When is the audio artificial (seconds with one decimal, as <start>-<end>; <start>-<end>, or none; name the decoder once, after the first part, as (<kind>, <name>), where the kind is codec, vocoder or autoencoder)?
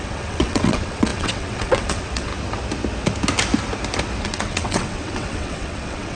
0.0-2.3 (vocoder, WaveNeXt); 4.2-6.1